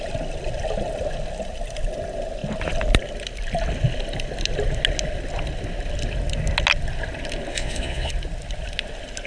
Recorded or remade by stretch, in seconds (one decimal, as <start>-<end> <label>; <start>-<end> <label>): 0.0-7.5 recorded; 7.5-8.1 remade; 8.1-9.3 recorded